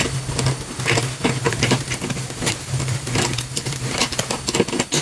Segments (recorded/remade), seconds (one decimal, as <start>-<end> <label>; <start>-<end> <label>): 0.0-1.4 recorded; 1.4-4.3 remade; 4.3-5.0 recorded